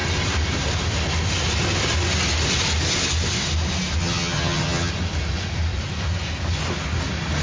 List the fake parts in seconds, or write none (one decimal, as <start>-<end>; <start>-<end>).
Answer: 4.0-4.9